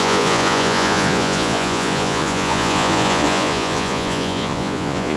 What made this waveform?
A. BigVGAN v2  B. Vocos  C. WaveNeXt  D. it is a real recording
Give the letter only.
B